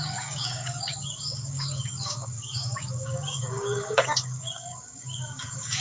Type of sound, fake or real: fake